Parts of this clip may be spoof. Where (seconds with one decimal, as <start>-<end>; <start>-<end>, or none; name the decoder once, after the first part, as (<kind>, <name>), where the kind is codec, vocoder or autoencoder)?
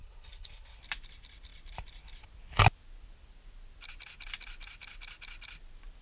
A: 0.0-0.8 (codec, HILCodec)